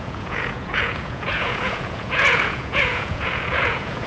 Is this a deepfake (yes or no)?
yes